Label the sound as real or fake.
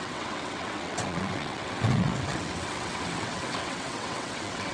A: fake